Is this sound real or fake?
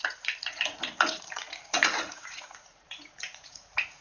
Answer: fake